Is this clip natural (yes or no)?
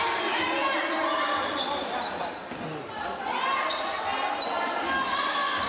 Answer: yes